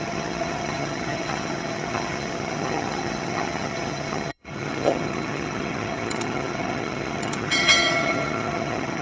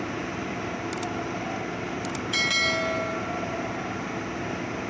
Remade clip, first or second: first